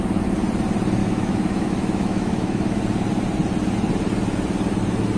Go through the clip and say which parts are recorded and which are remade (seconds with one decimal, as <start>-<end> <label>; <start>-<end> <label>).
0.0-1.0 recorded; 1.0-2.8 remade; 2.8-5.2 recorded